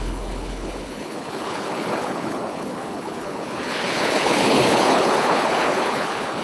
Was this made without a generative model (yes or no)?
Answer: no